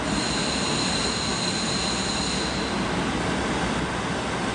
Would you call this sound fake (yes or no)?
no